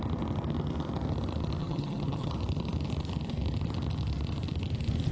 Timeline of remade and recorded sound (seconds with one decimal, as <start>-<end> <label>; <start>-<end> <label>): 0.0-1.6 recorded; 1.6-2.3 remade; 2.3-5.1 recorded